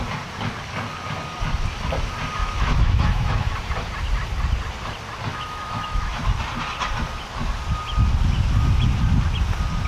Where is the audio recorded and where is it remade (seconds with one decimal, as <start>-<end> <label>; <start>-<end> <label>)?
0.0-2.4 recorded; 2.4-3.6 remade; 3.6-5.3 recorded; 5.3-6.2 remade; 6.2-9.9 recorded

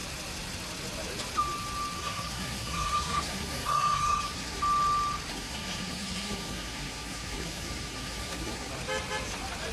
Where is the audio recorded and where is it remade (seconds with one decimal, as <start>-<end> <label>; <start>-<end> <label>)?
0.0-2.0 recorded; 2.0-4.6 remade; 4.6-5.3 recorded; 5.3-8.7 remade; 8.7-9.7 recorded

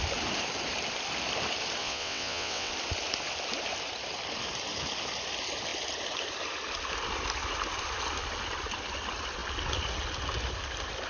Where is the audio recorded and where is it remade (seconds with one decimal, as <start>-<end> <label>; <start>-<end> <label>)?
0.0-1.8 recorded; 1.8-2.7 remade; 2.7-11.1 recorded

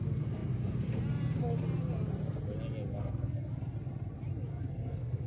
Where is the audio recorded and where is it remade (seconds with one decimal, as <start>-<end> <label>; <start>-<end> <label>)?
0.0-2.9 recorded; 2.9-3.5 remade; 3.5-4.5 recorded; 4.5-5.3 remade

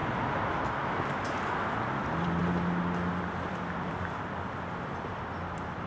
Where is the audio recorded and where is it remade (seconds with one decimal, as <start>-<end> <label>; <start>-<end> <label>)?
0.0-1.6 recorded; 1.6-2.4 remade; 2.4-3.1 recorded; 3.1-5.9 remade

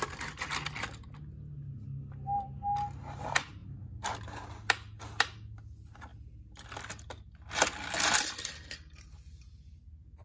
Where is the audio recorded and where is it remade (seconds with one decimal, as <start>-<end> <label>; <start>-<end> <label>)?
0.0-10.2 recorded

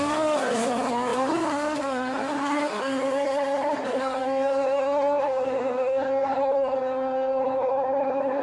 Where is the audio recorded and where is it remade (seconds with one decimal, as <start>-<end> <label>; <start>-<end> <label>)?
0.0-8.4 remade